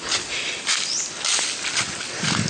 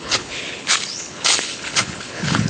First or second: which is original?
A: first